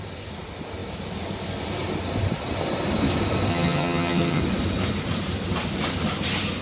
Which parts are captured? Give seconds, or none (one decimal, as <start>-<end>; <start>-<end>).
0.0-3.5; 4.4-6.6